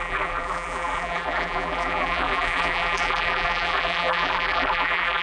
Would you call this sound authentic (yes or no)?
no